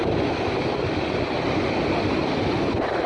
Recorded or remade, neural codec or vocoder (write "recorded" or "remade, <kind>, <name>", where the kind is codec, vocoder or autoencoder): recorded